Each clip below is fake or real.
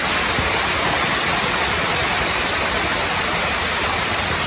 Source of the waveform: real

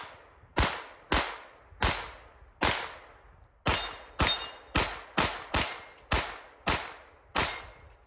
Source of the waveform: real